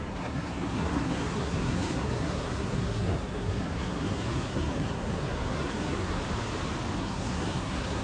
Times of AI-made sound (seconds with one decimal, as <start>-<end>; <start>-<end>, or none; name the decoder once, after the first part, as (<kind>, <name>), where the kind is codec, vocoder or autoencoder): 0.0-6.2 (codec, SNAC); 7.0-8.0